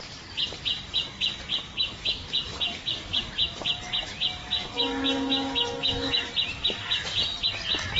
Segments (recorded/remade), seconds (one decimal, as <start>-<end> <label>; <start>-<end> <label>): 0.0-1.5 recorded; 1.5-3.3 remade; 3.3-4.4 recorded; 4.4-6.3 remade; 6.3-8.0 recorded